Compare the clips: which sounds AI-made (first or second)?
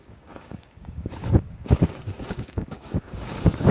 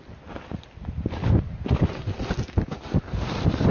first